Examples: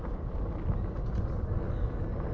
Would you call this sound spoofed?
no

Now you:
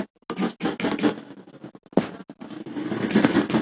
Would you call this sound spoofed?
no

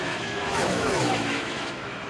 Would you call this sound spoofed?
yes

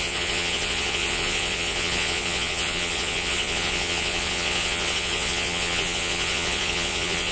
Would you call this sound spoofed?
yes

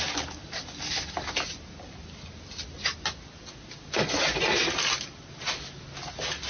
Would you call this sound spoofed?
no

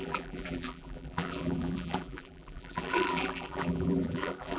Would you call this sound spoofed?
yes